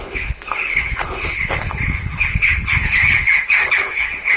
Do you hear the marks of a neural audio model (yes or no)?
yes